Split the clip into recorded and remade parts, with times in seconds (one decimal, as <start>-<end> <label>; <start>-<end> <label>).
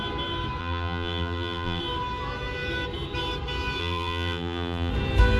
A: 0.0-0.6 recorded; 0.6-1.8 remade; 1.8-3.8 recorded; 3.8-4.9 remade; 4.9-5.4 recorded